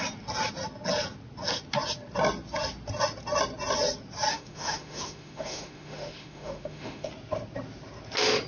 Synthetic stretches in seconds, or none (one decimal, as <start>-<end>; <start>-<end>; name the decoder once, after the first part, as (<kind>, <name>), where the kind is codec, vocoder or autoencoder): 4.3-7.1 (autoencoder, DAC-VAE)